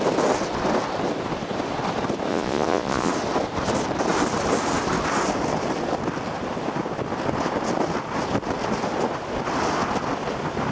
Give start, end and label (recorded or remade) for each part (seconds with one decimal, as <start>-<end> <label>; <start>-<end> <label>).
0.0-2.3 recorded; 2.3-3.1 remade; 3.1-10.7 recorded